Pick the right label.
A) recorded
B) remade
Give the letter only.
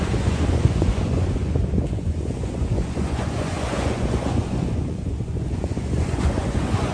B